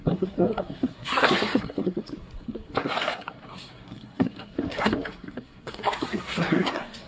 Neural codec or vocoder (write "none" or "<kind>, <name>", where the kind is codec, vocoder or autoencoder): codec, SNAC